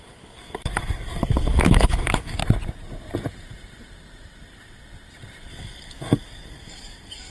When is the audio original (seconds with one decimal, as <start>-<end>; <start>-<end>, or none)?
2.4-5.5